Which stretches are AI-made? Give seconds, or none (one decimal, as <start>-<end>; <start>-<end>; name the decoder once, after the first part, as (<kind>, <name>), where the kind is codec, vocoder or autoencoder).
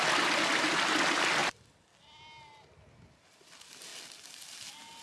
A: none